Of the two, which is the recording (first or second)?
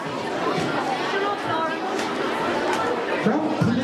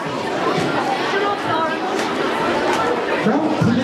first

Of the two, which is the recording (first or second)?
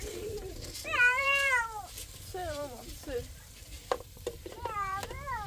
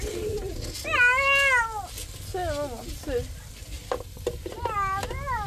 second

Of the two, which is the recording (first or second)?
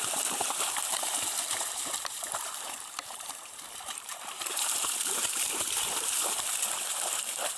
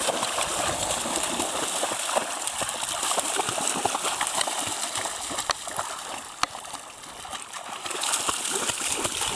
second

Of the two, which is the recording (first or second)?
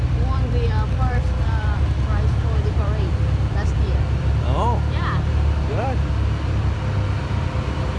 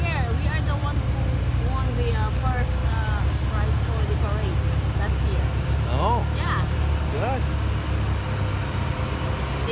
second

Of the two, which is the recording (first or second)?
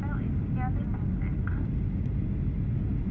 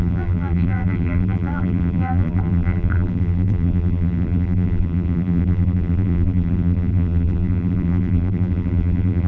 first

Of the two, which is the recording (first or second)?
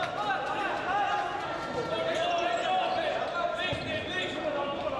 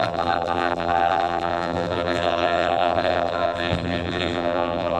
first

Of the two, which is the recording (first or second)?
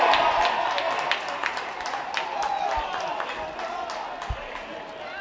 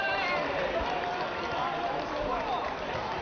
first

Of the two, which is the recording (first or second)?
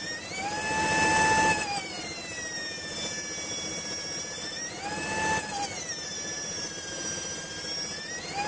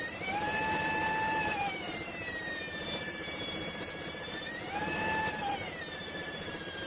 first